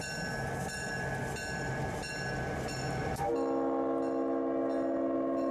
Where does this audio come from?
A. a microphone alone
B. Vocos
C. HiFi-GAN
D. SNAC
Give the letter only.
A